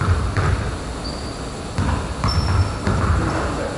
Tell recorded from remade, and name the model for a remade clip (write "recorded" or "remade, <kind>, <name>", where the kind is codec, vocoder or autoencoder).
recorded